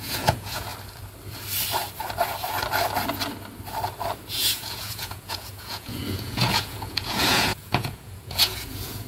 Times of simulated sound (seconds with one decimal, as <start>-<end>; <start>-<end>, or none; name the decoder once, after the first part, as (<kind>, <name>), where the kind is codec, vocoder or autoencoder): 0.0-0.7 (vocoder, Vocos); 4.3-9.1